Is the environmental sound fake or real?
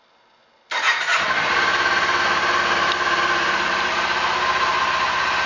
real